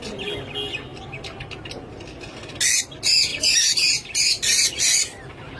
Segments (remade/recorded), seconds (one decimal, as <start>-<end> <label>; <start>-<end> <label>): 0.0-3.3 recorded; 3.3-4.8 remade; 4.8-5.6 recorded

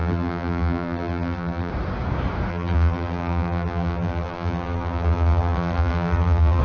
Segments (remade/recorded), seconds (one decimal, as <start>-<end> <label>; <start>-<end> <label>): 0.0-1.7 remade; 1.7-2.5 recorded; 2.5-6.6 remade

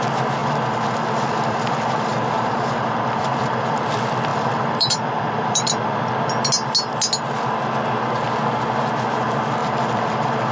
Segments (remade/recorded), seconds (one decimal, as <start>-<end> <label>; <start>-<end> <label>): 0.0-0.4 recorded; 0.4-3.8 remade; 3.8-4.3 recorded; 4.3-6.1 remade; 6.1-9.6 recorded; 9.6-10.5 remade

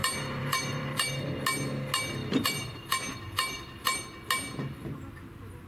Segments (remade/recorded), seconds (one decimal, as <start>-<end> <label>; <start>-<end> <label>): 0.0-1.1 remade; 1.1-2.2 recorded; 2.2-4.0 remade; 4.0-5.7 recorded

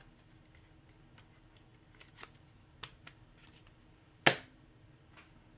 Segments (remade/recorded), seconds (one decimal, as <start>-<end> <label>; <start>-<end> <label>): 0.0-5.6 recorded